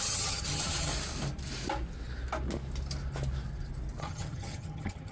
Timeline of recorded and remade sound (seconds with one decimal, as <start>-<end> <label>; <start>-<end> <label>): 0.0-0.9 remade; 0.9-4.0 recorded; 4.0-5.1 remade